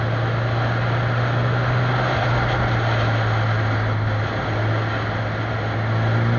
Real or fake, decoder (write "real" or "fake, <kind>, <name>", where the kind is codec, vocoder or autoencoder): real